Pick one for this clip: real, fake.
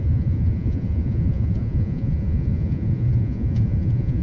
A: fake